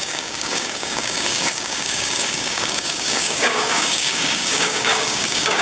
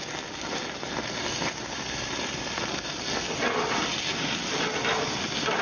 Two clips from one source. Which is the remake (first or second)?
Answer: first